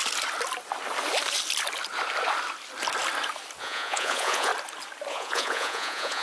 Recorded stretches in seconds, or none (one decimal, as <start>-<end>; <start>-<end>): 0.0-3.6; 4.5-5.1